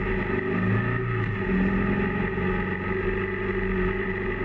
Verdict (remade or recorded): recorded